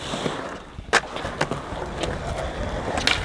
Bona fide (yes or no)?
yes